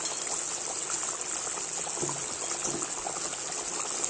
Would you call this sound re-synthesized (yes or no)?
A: no